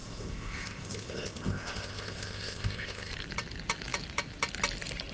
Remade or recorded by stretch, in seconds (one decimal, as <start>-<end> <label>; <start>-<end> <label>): 0.0-3.1 remade; 3.1-5.1 recorded

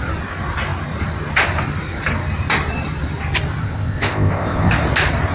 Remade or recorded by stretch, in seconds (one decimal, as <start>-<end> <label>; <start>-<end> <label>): 0.0-3.6 recorded; 3.6-4.7 remade; 4.7-5.3 recorded